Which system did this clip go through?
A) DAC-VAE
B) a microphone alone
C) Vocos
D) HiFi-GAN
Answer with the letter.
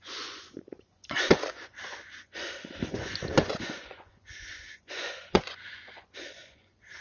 C